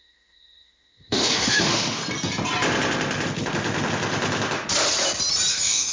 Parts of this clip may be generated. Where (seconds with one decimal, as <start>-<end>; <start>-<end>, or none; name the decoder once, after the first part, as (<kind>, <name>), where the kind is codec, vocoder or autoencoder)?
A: 0.0-2.0 (autoencoder, DAC-VAE); 5.5-5.9